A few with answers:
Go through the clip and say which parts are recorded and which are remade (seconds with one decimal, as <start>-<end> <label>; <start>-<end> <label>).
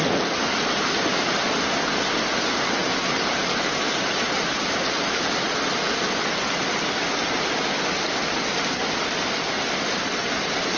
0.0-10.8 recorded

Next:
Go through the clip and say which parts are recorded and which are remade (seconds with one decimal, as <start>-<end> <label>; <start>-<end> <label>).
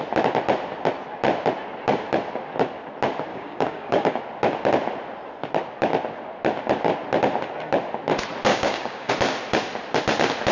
0.0-3.3 recorded; 3.3-4.2 remade; 4.2-8.5 recorded; 8.5-9.1 remade; 9.1-10.5 recorded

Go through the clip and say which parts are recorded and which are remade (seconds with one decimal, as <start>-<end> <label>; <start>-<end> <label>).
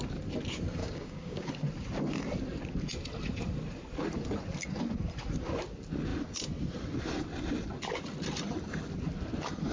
0.0-0.8 recorded; 0.8-1.5 remade; 1.5-9.7 recorded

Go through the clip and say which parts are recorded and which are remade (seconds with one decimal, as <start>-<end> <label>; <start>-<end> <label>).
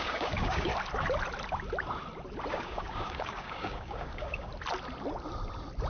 0.0-0.7 remade; 0.7-2.5 recorded; 2.5-4.5 remade; 4.5-5.9 recorded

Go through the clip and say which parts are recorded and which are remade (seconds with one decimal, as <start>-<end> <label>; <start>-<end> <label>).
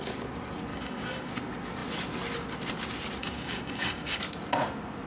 0.0-0.7 recorded; 0.7-1.3 remade; 1.3-3.2 recorded; 3.2-4.2 remade; 4.2-5.1 recorded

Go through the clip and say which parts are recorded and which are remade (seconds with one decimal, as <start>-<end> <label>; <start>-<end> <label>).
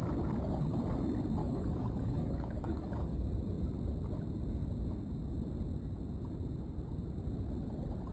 0.0-1.4 recorded; 1.4-3.2 remade; 3.2-8.1 recorded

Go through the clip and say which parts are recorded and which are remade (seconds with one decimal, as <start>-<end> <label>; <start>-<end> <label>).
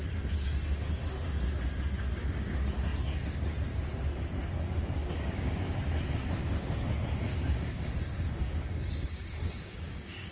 0.0-5.0 recorded; 5.0-5.8 remade; 5.8-7.3 recorded; 7.3-7.9 remade; 7.9-8.4 recorded; 8.4-10.3 remade